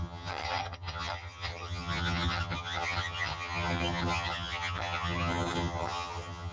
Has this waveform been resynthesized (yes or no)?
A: yes